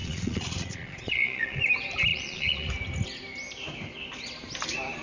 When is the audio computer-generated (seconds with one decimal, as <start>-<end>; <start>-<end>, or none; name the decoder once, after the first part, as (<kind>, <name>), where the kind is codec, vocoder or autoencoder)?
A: 0.0-1.6 (vocoder, Vocos); 2.1-2.7